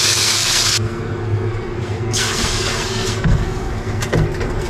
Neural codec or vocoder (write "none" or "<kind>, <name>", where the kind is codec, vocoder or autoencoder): codec, SNAC